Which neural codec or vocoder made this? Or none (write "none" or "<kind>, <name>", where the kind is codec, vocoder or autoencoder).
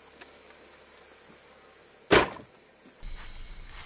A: none